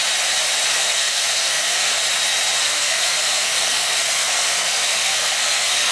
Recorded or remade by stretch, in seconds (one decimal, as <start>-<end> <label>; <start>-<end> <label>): 0.0-0.7 recorded; 0.7-2.0 remade; 2.0-2.6 recorded; 2.6-5.9 remade